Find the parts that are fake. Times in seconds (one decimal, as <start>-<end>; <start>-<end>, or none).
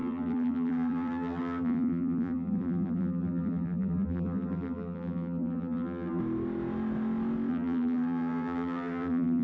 0.0-6.2; 7.5-9.4